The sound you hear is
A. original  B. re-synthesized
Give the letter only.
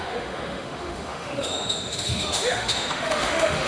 B